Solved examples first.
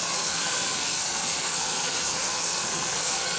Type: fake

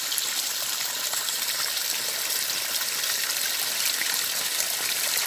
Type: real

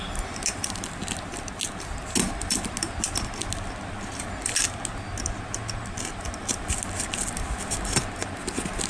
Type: real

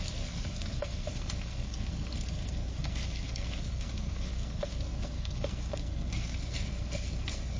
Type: fake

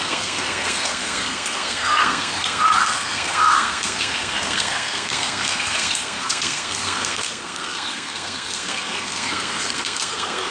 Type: fake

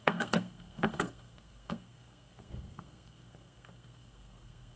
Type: fake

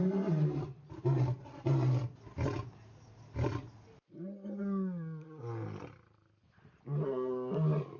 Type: real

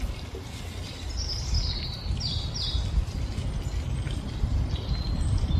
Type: real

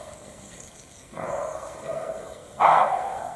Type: fake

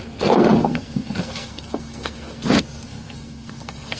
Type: fake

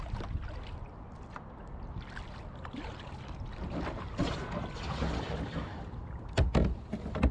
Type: real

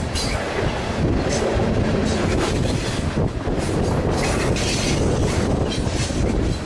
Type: real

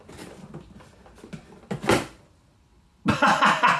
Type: real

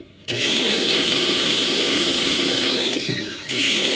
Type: fake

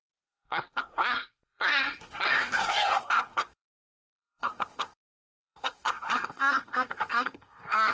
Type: fake